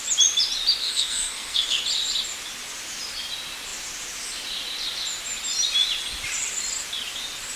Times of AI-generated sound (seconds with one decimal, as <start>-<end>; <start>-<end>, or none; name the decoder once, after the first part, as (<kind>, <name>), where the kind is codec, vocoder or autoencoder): 0.8-1.8 (codec, SNAC)